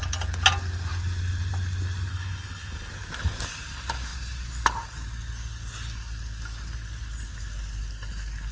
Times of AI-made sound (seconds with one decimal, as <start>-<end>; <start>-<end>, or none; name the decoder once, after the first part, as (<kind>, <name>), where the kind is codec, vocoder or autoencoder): 2.1-2.9 (codec, HILCodec)